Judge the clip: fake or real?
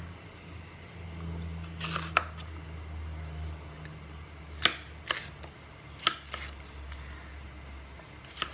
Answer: real